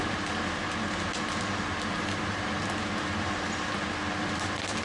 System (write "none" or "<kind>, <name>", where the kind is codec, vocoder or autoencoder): none